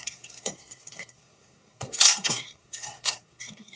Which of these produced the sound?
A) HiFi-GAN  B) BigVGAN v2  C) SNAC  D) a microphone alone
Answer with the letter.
C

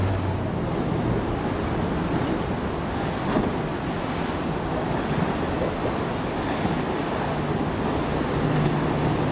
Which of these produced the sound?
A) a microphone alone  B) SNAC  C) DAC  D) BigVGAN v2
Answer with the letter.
A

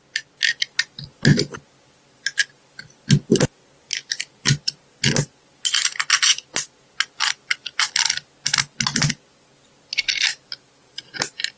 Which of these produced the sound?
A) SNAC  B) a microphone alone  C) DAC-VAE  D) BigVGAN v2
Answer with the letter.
B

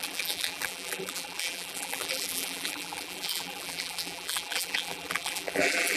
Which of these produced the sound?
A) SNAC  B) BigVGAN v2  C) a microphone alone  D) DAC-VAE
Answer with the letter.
B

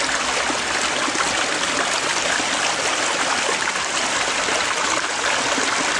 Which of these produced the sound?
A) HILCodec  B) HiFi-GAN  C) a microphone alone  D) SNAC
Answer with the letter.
C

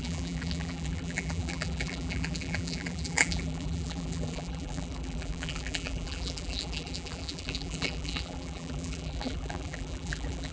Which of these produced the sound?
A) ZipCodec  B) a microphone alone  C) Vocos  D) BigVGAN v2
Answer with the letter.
D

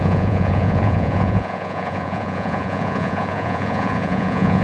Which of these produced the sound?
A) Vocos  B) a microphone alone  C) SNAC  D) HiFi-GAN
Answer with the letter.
A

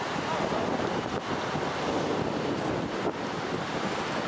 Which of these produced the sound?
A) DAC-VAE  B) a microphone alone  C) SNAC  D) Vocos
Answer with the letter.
B